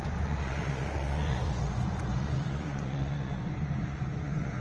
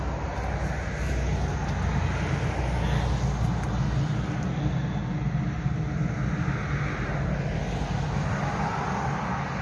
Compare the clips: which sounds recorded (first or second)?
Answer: second